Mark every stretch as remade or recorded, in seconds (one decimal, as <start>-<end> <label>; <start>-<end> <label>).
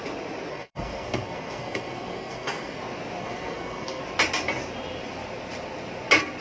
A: 0.0-0.5 recorded; 0.5-2.8 remade; 2.8-3.2 recorded; 3.2-4.0 remade; 4.0-6.4 recorded